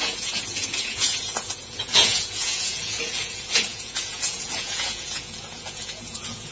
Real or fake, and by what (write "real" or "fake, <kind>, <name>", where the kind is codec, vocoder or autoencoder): fake, vocoder, Vocos